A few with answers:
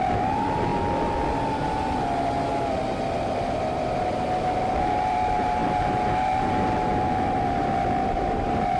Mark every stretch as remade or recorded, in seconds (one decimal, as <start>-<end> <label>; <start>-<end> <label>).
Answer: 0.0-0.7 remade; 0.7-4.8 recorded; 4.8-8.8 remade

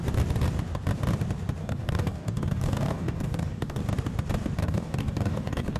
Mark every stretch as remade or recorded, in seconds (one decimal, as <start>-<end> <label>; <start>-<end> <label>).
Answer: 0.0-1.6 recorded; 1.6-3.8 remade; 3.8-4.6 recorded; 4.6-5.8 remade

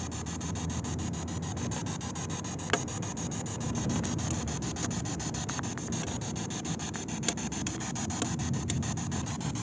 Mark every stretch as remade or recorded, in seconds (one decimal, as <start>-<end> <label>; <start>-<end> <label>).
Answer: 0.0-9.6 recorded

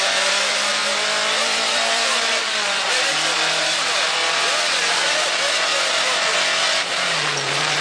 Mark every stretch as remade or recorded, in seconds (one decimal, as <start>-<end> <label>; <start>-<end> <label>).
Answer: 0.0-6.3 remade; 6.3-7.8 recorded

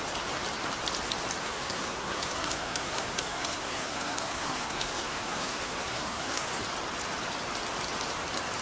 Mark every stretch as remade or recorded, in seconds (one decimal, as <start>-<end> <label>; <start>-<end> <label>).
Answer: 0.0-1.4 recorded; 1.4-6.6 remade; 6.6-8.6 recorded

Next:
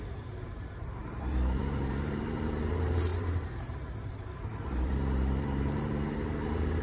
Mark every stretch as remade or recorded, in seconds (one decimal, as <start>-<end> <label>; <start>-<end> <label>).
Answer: 0.0-6.8 remade

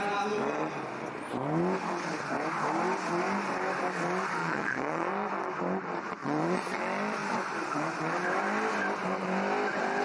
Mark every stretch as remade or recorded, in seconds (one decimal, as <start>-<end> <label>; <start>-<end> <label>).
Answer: 0.0-4.4 recorded; 4.4-5.1 remade; 5.1-6.2 recorded; 6.2-6.8 remade; 6.8-10.0 recorded

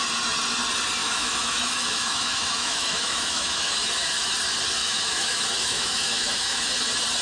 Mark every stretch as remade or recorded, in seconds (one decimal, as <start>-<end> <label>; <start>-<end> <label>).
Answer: 0.0-1.0 recorded; 1.0-4.3 remade; 4.3-4.8 recorded; 4.8-6.7 remade; 6.7-7.2 recorded